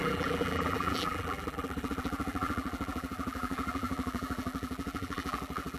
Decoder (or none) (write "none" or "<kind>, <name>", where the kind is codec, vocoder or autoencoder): vocoder, BigVGAN v2